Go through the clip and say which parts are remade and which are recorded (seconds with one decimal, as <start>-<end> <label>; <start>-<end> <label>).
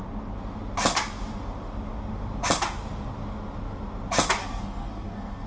0.0-4.4 recorded; 4.4-5.5 remade